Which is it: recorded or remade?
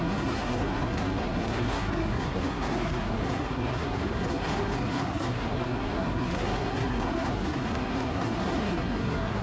remade